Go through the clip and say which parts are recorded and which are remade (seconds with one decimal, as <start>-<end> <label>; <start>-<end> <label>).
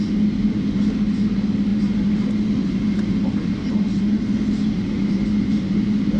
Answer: 0.0-6.2 recorded